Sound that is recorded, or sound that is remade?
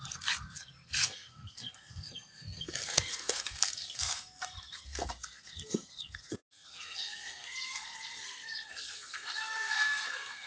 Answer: remade